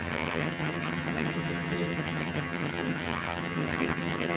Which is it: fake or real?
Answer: fake